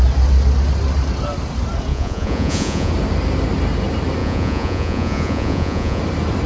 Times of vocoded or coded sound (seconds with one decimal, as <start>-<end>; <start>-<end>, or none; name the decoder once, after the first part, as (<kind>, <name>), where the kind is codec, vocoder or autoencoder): 1.9-2.9 (vocoder, Vocos); 4.2-6.0

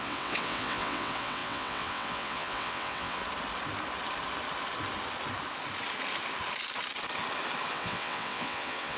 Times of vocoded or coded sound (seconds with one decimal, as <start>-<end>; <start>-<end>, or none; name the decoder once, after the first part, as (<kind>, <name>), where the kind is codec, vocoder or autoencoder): 0.0-3.2 (vocoder, WaveNeXt); 7.7-9.0